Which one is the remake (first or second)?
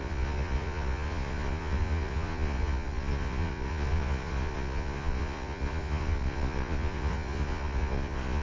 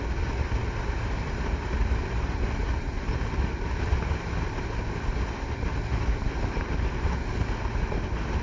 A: first